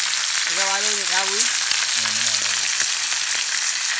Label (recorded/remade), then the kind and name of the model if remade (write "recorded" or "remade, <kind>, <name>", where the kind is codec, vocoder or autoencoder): recorded